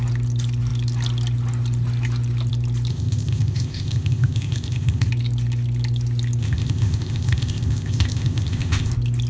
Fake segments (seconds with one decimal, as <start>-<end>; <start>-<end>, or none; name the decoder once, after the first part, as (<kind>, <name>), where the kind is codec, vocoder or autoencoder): 2.9-5.1 (codec, ZipCodec); 6.4-8.9